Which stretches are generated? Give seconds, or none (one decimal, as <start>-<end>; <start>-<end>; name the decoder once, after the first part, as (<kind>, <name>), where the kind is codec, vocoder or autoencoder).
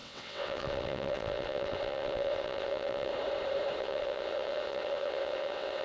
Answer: 0.0-3.1 (vocoder, WaveNeXt); 3.8-5.8